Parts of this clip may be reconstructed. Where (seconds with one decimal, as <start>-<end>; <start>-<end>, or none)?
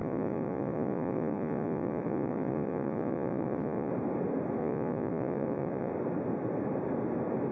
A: 0.0-3.9; 4.6-5.9